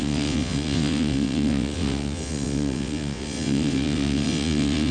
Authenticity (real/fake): fake